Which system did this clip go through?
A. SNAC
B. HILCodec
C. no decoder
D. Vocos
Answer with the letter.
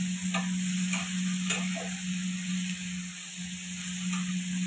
C